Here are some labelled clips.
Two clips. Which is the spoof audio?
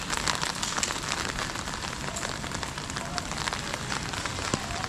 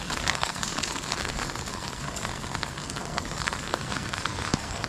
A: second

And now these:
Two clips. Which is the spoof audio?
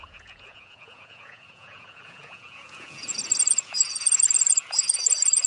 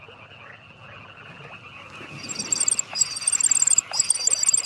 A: first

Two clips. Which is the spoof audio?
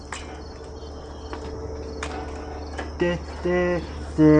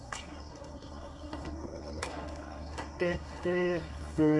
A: second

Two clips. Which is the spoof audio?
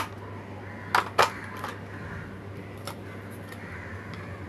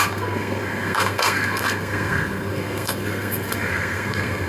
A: second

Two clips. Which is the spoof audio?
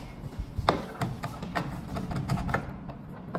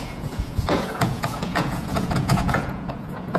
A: second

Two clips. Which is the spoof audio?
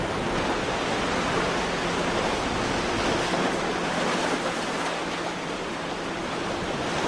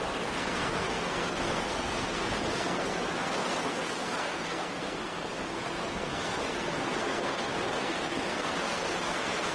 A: second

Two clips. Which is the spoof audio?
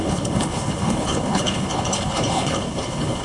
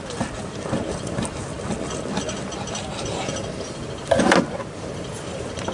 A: first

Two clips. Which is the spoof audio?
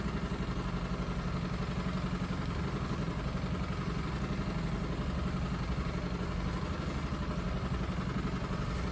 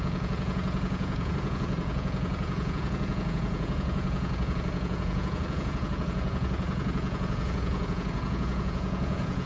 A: second